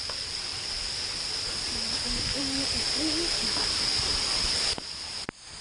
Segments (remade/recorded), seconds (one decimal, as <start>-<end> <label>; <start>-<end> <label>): 0.0-5.6 recorded